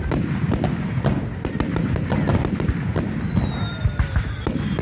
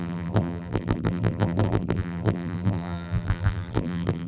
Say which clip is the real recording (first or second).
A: first